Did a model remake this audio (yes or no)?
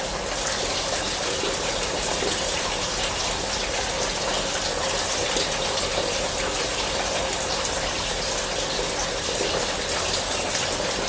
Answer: no